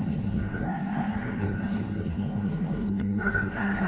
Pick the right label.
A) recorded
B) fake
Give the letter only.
B